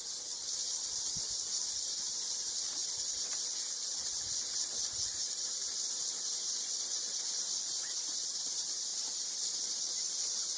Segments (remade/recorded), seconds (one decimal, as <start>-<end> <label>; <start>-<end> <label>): 0.0-2.8 remade; 2.8-5.3 recorded; 5.3-8.9 remade; 8.9-10.6 recorded